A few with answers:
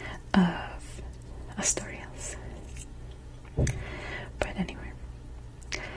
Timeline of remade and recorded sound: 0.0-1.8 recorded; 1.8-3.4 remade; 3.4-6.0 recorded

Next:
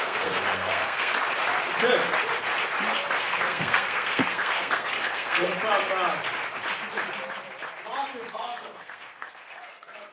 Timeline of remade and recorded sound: 0.0-1.1 remade; 1.1-3.2 recorded; 3.2-5.5 remade; 5.5-8.3 recorded; 8.3-10.1 remade

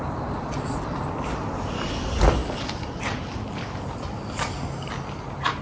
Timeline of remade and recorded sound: 0.0-5.6 recorded

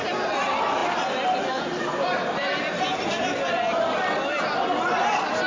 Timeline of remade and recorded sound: 0.0-5.5 recorded

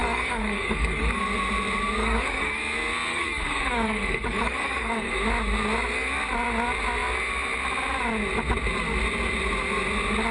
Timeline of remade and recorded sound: 0.0-1.2 remade; 1.2-2.0 recorded; 2.0-2.6 remade; 2.6-3.1 recorded; 3.1-5.1 remade; 5.1-10.3 recorded

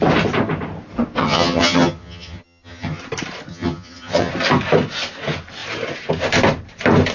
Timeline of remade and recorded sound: 0.0-1.2 recorded; 1.2-3.0 remade; 3.0-3.5 recorded; 3.5-4.3 remade; 4.3-7.1 recorded

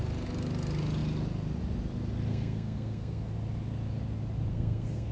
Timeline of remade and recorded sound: 0.0-2.3 recorded; 2.3-3.3 remade; 3.3-4.5 recorded; 4.5-5.1 remade